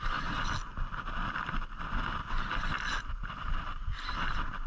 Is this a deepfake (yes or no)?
no